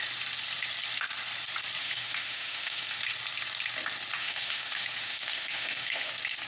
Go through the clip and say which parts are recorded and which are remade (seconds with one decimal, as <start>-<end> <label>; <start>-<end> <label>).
0.0-1.8 recorded; 1.8-3.0 remade; 3.0-4.2 recorded; 4.2-6.1 remade; 6.1-6.5 recorded